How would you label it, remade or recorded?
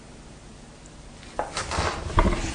recorded